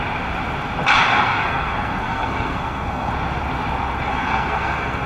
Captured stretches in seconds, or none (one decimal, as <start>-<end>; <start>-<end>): 0.0-1.1; 3.1-4.1